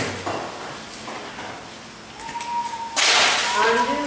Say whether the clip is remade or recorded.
recorded